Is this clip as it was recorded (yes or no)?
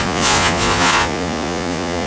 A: no